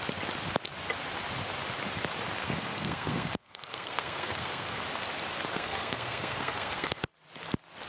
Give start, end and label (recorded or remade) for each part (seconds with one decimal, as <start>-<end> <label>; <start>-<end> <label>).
0.0-2.4 recorded; 2.4-4.8 remade; 4.8-5.5 recorded; 5.5-7.0 remade; 7.0-7.9 recorded